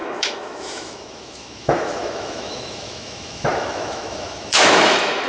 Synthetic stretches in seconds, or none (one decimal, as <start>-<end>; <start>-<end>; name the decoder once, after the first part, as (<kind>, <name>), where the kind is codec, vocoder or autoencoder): 0.0-5.3 (autoencoder, DAC-VAE)